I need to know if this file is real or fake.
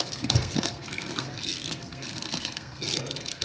fake